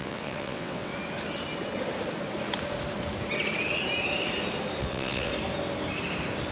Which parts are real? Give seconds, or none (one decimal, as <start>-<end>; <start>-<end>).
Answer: 0.9-4.8; 5.3-6.5